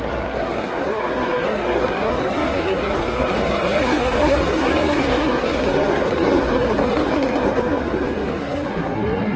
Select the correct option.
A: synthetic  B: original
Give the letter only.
A